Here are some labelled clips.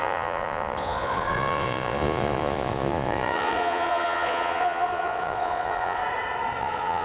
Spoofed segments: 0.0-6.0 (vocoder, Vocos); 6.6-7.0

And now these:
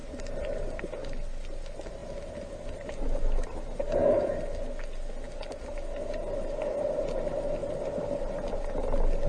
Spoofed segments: none

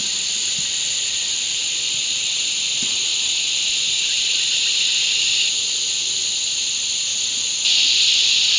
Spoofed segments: none

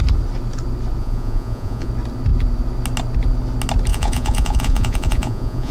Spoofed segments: 1.0-1.9 (vocoder, Vocos); 3.9-5.7

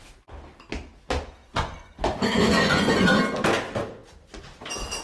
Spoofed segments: 1.4-3.2 (vocoder, Vocos)